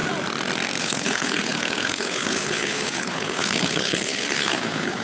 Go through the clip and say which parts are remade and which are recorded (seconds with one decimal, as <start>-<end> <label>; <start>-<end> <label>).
0.0-0.8 recorded; 0.8-5.0 remade